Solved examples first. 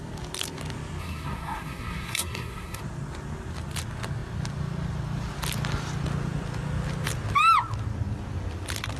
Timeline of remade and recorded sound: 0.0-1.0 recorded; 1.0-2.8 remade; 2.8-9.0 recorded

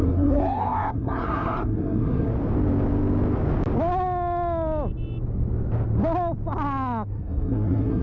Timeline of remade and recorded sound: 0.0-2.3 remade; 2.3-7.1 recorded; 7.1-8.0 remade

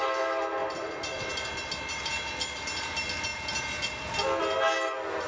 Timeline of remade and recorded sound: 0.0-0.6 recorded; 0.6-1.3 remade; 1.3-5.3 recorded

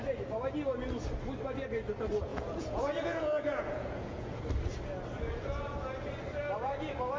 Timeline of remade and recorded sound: 0.0-2.3 recorded; 2.3-4.4 remade; 4.4-7.2 recorded

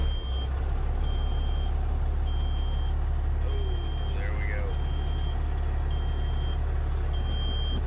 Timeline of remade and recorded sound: 0.0-7.9 recorded